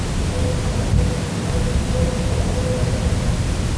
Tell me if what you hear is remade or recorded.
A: recorded